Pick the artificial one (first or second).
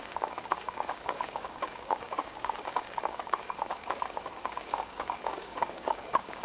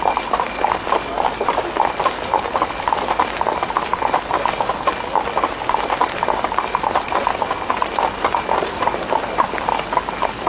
first